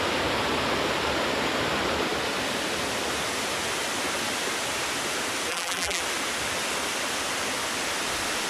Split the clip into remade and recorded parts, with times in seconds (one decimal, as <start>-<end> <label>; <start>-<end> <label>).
0.0-5.5 recorded; 5.5-6.0 remade; 6.0-8.5 recorded